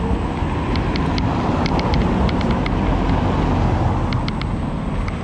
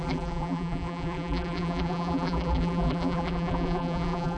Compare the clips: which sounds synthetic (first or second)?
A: second